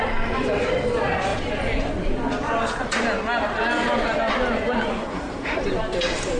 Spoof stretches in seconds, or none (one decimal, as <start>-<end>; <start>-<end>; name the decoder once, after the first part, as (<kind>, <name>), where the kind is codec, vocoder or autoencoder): 4.9-5.6 (codec, SNAC)